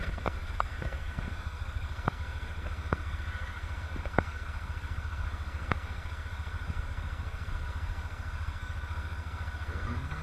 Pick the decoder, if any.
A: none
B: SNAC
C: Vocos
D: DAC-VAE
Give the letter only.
B